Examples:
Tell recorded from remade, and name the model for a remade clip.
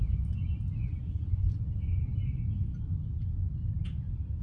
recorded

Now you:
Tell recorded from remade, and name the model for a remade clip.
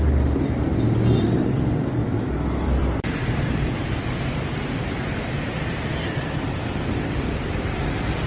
remade, vocoder, BigVGAN v2